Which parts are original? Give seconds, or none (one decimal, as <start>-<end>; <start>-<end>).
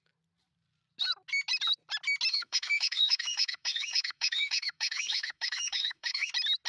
0.0-2.3; 6.3-6.7